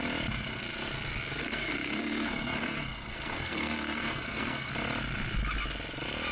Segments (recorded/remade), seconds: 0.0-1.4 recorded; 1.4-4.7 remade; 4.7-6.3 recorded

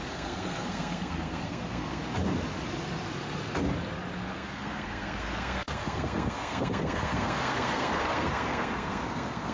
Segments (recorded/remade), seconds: 0.0-2.0 remade; 2.0-4.3 recorded; 4.3-9.5 remade

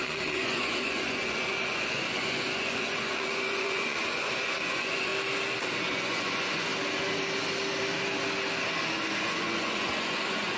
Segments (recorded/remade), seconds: 0.0-5.1 remade; 5.1-5.8 recorded; 5.8-6.7 remade; 6.7-9.2 recorded; 9.2-10.6 remade

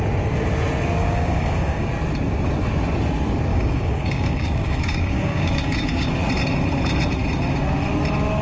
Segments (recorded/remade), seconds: 0.0-1.0 recorded; 1.0-1.9 remade; 1.9-3.5 recorded; 3.5-6.2 remade; 6.2-8.4 recorded

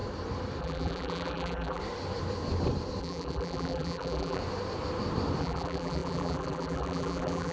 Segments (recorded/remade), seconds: 0.0-0.6 recorded; 0.6-1.8 remade; 1.8-3.0 recorded; 3.0-4.4 remade; 4.4-5.4 recorded; 5.4-7.5 remade

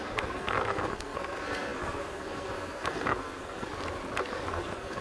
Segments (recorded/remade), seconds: 0.0-3.7 remade; 3.7-4.5 recorded; 4.5-5.0 remade

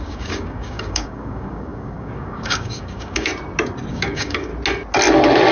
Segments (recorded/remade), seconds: 0.0-3.3 remade; 3.3-3.9 recorded; 3.9-4.5 remade; 4.5-5.5 recorded